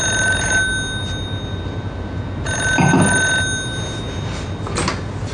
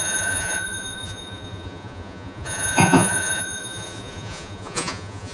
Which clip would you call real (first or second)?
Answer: first